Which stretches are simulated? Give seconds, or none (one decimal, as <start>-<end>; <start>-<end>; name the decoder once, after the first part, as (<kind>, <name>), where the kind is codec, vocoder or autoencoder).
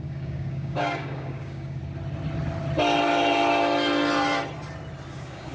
0.0-1.8 (codec, DAC); 5.1-5.5